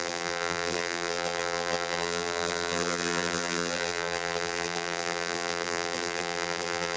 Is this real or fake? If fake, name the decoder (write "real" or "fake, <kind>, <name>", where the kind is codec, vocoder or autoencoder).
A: fake, vocoder, BigVGAN v2